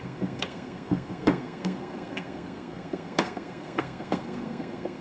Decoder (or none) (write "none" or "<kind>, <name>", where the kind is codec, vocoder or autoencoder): codec, SNAC